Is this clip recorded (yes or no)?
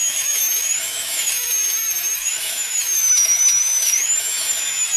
no